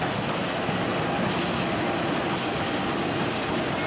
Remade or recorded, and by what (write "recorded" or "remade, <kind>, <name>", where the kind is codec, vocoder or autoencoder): recorded